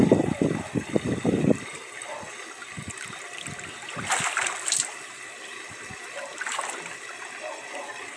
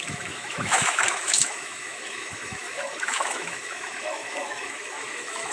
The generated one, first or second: second